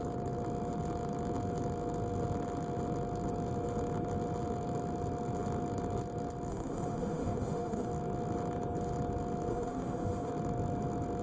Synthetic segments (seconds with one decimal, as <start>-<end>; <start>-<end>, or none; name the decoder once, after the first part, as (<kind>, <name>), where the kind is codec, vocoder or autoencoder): 6.5-7.9 (autoencoder, DAC-VAE); 9.5-10.3